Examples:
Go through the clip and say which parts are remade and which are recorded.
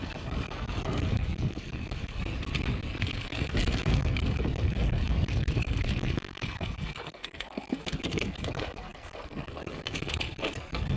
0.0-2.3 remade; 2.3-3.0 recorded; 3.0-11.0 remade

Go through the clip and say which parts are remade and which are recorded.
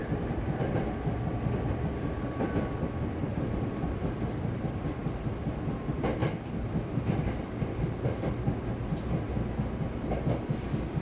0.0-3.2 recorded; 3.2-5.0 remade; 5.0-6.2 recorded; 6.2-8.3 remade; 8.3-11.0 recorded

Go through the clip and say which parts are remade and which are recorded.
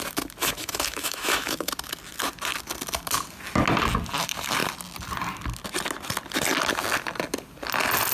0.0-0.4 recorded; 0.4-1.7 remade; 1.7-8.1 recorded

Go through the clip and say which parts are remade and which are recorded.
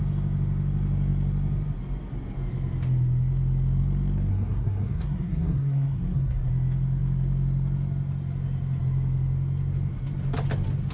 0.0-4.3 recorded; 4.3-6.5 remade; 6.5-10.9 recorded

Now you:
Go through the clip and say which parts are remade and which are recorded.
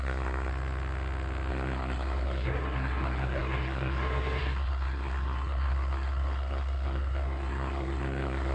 0.0-0.5 remade; 0.5-1.5 recorded; 1.5-8.5 remade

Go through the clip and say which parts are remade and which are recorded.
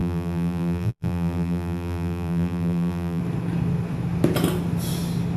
0.0-3.2 remade; 3.2-5.4 recorded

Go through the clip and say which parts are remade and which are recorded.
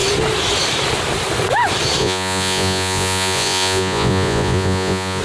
0.0-2.0 recorded; 2.0-5.2 remade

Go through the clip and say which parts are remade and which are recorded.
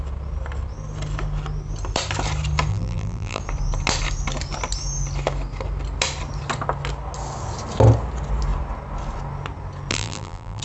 0.0-2.7 recorded; 2.7-3.4 remade; 3.4-9.9 recorded; 9.9-10.6 remade